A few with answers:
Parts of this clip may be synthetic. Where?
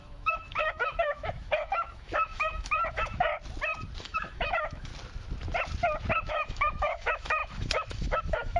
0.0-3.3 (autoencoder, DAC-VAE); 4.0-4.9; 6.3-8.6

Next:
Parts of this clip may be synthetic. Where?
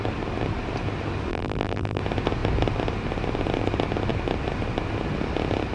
1.3-2.0 (vocoder, BigVGAN v2)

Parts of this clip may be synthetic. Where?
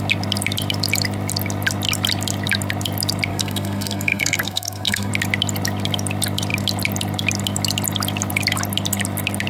3.3-5.1 (codec, SNAC)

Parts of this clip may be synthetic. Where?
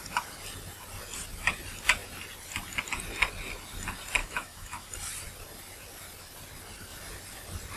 4.2-4.9 (autoencoder, DAC-VAE)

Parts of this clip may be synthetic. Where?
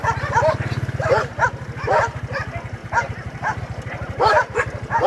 2.8-3.6 (vocoder, BigVGAN v2)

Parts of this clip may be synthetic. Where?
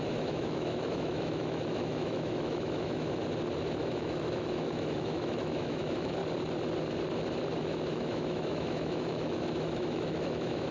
0.0-3.2 (autoencoder, DAC-VAE); 3.8-6.2; 7.6-10.7